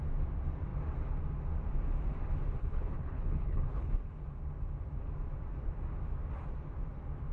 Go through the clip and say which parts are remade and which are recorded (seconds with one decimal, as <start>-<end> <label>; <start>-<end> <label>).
0.0-2.6 recorded; 2.6-3.9 remade; 3.9-7.3 recorded